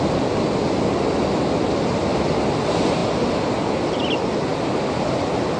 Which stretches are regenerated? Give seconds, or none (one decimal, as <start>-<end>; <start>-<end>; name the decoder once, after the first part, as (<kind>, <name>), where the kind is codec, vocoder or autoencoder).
none